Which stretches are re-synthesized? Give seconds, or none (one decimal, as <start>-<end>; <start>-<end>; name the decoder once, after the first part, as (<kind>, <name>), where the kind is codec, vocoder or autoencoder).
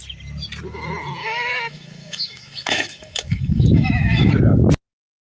1.2-4.3 (autoencoder, DAC-VAE)